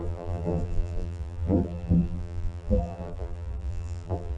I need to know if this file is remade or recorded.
remade